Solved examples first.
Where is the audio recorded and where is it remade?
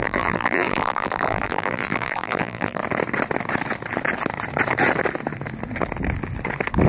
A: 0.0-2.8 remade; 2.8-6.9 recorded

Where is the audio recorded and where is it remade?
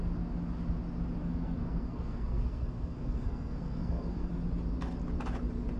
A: 0.0-1.2 recorded; 1.2-4.3 remade; 4.3-5.8 recorded